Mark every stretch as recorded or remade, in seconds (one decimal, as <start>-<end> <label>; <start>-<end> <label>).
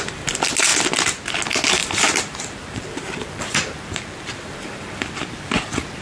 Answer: 0.0-1.8 recorded; 1.8-5.4 remade; 5.4-6.0 recorded